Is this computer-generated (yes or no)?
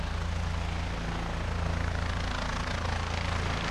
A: no